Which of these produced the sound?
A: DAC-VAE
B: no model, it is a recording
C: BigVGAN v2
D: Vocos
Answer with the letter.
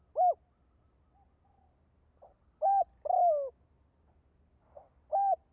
B